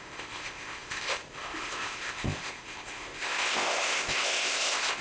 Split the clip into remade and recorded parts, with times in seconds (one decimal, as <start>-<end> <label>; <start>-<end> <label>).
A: 0.0-5.0 remade